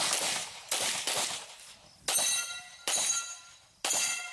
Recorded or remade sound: recorded